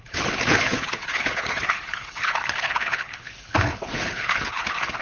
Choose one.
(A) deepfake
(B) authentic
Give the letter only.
A